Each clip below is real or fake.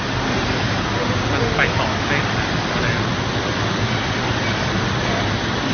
real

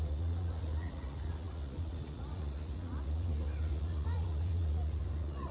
fake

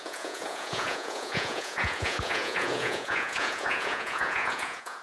fake